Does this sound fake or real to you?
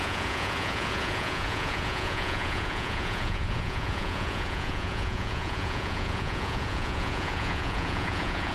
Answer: fake